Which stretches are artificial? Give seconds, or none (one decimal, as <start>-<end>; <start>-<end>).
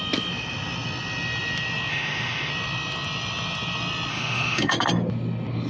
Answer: 1.9-2.5; 4.1-4.7